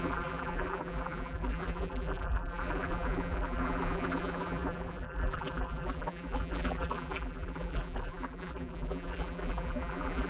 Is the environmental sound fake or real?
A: fake